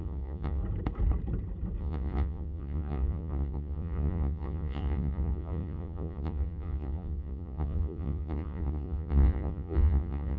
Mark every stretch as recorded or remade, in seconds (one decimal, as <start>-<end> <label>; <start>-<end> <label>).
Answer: 0.0-0.6 remade; 0.6-1.8 recorded; 1.8-10.4 remade